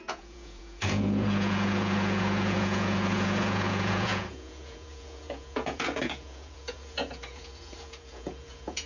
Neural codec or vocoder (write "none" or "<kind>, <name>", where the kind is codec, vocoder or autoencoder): vocoder, Vocos